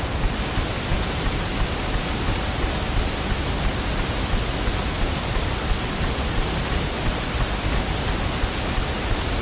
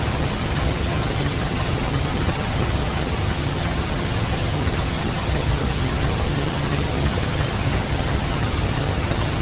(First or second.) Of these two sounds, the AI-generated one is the second